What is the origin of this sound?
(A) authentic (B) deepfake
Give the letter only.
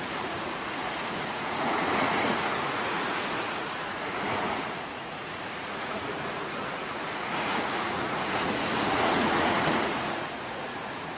B